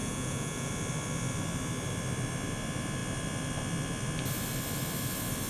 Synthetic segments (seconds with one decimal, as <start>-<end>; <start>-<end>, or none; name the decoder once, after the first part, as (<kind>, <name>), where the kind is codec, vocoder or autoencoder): 0.0-0.7 (vocoder, Vocos)